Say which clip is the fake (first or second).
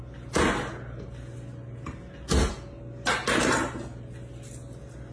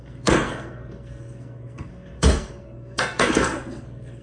second